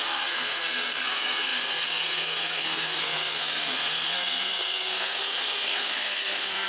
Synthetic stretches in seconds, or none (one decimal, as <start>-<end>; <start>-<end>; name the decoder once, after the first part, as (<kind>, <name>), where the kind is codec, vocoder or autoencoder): 0.0-6.7 (codec, SNAC)